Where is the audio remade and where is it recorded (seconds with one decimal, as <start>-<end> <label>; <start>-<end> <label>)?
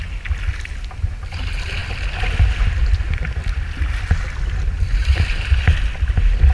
0.0-6.5 recorded